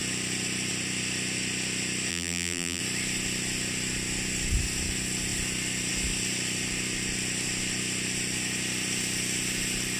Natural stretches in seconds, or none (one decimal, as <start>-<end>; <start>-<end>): 0.0-2.1; 2.8-10.0